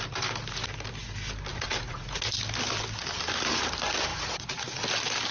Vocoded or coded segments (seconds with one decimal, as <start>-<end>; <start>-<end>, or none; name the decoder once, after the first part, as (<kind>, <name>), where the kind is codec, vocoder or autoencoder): 1.5-2.2 (vocoder, Vocos); 4.1-4.8